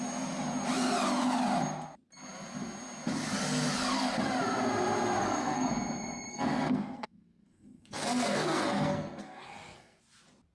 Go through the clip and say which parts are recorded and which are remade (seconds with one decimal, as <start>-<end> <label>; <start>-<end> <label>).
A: 0.0-5.2 recorded; 5.2-5.7 remade; 5.7-6.3 recorded; 6.3-10.0 remade; 10.0-10.5 recorded